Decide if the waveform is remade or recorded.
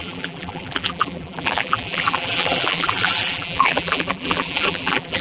remade